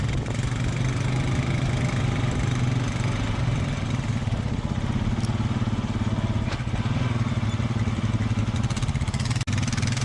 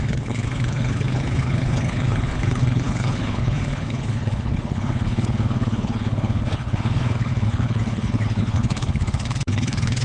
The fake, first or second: second